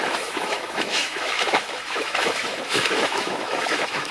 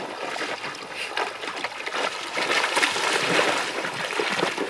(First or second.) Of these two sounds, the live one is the second